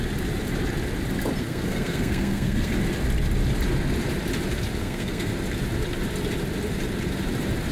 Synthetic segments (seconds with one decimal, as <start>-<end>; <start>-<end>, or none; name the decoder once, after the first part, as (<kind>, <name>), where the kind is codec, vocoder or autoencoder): 1.4-2.7 (codec, SNAC); 4.8-5.3